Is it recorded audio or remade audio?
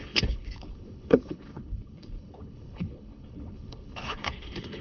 remade